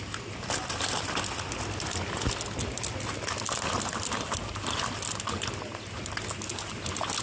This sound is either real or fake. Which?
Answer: real